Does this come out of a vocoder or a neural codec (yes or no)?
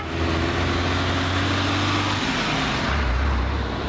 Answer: no